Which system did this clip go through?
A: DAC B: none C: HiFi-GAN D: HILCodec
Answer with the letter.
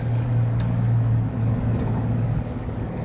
A